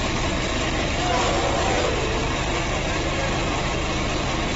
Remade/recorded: recorded